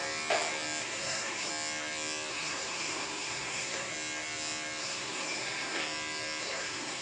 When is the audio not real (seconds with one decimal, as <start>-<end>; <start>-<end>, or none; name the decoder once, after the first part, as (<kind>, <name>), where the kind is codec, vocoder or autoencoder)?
0.8-1.5 (codec, SNAC); 2.3-3.9; 4.8-5.8; 6.4-7.0